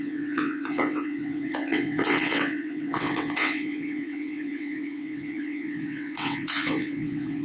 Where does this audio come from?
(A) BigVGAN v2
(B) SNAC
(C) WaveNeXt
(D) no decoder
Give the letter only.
C